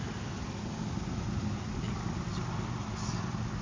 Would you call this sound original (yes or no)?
yes